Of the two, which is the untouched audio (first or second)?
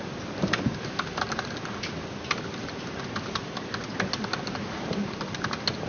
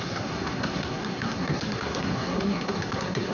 first